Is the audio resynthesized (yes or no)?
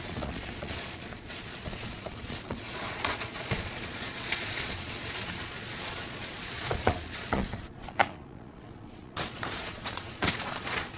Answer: yes